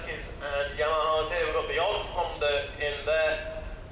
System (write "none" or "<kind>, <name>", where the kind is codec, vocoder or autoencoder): none